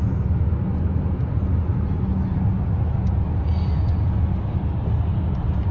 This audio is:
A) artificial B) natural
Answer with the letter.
B